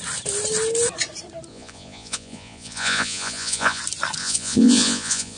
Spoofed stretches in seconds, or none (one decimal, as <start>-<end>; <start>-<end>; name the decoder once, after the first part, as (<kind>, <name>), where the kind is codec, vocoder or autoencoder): 1.5-3.8 (vocoder, Vocos); 4.2-5.4